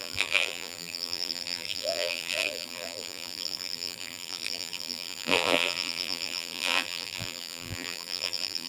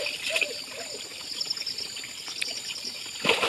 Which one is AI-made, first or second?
first